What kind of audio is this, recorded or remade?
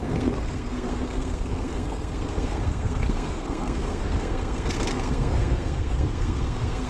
remade